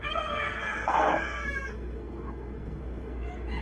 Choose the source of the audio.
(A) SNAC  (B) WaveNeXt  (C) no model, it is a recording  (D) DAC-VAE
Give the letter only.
A